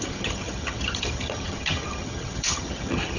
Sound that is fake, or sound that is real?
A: fake